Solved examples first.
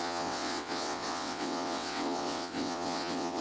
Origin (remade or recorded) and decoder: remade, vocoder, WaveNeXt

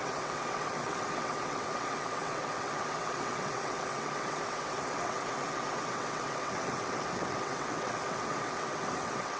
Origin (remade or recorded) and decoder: remade, vocoder, WaveNeXt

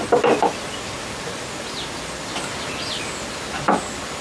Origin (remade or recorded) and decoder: recorded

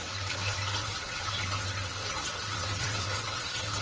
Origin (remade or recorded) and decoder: remade, vocoder, WaveNeXt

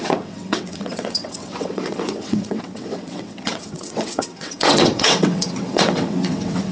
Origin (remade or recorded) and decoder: remade, vocoder, WaveNeXt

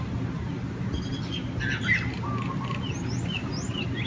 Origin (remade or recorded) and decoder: recorded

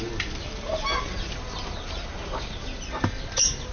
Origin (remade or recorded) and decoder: recorded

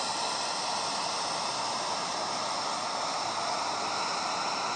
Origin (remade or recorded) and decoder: recorded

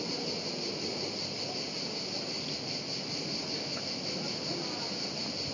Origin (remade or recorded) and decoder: recorded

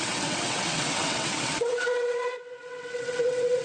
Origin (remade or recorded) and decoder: remade, vocoder, WaveNeXt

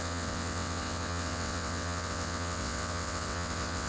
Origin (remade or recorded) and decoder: remade, vocoder, WaveNeXt